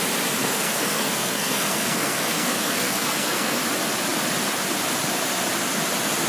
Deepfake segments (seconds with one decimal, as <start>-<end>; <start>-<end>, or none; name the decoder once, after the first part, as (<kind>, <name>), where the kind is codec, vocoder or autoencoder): 0.4-3.6 (codec, SNAC)